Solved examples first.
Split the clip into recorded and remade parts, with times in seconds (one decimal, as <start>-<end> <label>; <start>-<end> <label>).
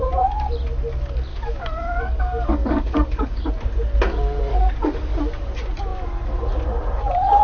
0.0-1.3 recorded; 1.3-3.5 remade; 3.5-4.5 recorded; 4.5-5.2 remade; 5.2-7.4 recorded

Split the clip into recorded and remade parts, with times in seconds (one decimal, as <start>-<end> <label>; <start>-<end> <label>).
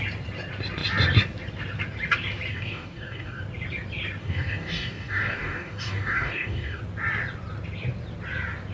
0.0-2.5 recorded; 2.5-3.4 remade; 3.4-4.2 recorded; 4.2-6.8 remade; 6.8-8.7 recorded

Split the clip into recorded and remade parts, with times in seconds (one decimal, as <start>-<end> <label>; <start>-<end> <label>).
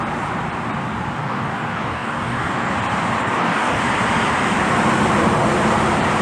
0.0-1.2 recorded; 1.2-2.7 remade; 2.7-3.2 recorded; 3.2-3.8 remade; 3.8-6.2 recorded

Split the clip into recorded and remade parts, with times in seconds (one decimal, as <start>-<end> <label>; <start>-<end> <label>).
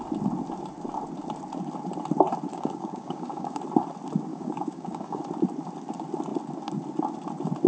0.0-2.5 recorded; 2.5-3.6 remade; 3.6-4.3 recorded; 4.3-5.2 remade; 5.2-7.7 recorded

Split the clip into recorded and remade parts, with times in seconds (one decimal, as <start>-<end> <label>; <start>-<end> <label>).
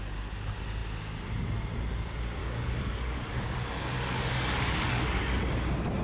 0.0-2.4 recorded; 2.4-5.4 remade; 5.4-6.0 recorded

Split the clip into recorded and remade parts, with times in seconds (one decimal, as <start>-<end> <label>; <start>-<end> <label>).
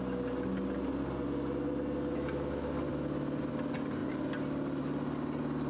0.0-5.7 recorded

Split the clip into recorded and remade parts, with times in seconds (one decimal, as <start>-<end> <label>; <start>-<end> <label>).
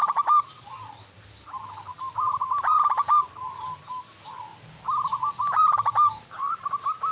0.0-7.1 recorded